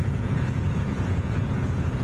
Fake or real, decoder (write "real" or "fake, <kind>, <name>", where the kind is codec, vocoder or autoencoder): fake, vocoder, Vocos